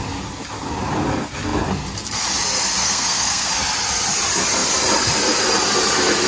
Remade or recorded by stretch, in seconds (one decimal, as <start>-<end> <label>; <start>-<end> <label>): 0.0-2.8 recorded; 2.8-3.5 remade; 3.5-6.3 recorded